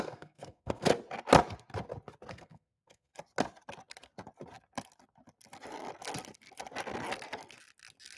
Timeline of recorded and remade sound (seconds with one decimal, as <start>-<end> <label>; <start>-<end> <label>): 0.0-0.9 remade; 0.9-2.3 recorded; 2.3-3.1 remade; 3.1-8.2 recorded